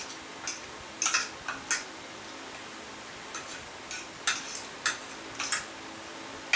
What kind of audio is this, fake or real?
real